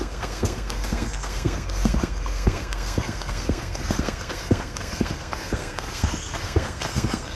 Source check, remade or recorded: remade